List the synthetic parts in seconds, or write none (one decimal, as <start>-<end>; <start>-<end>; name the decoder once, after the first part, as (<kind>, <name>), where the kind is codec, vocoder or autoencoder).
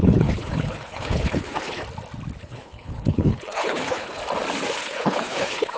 0.0-1.8 (codec, HILCodec); 2.4-4.2; 4.8-5.8